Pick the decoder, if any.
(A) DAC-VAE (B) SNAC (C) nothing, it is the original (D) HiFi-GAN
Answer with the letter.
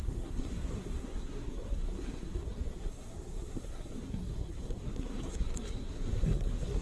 B